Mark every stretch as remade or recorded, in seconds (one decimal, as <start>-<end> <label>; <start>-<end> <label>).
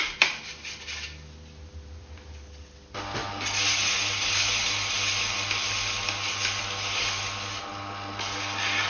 0.0-8.9 recorded